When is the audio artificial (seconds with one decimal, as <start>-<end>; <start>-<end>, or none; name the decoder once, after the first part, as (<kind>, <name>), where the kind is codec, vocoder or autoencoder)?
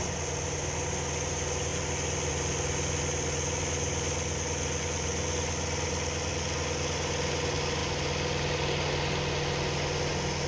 none